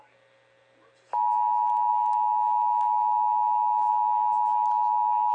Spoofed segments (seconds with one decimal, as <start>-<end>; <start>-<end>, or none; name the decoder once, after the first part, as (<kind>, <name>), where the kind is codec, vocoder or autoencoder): 1.9-3.9 (autoencoder, DAC-VAE)